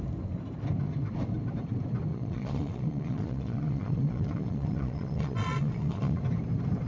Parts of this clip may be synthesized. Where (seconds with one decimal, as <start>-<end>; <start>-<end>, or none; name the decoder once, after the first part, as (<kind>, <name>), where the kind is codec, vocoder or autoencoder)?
2.1-6.2 (vocoder, Vocos)